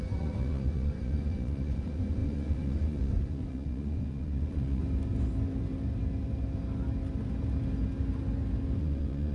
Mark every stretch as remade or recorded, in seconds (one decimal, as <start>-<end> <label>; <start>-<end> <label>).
0.0-4.8 remade; 4.8-8.8 recorded; 8.8-9.3 remade